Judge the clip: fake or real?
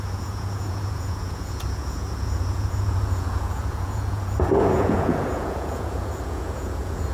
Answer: fake